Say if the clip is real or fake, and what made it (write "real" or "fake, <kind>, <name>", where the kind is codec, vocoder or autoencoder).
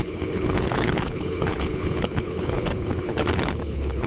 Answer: fake, codec, HILCodec